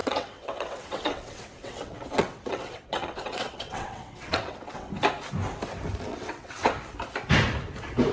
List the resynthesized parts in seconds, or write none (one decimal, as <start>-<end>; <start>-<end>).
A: 0.0-4.9; 6.1-6.7